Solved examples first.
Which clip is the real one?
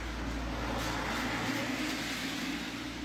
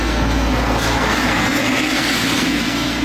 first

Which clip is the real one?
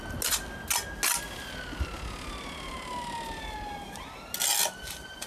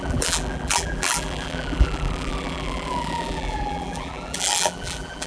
first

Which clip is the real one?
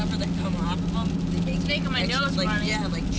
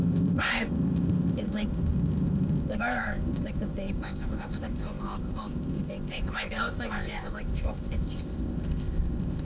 first